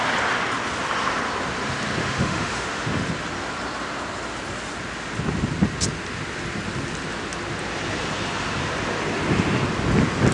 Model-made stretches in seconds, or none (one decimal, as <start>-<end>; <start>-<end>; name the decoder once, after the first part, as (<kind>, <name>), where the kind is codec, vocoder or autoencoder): 2.0-3.1 (autoencoder, DAC-VAE)